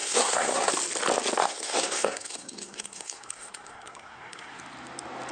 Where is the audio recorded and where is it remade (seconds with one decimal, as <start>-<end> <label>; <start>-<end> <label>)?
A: 0.0-0.7 remade; 0.7-1.4 recorded; 1.4-4.6 remade; 4.6-5.3 recorded